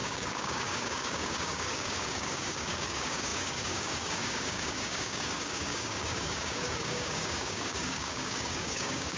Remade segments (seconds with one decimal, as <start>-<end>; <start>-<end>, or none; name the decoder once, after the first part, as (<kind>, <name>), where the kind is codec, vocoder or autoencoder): 0.0-9.2 (codec, DAC)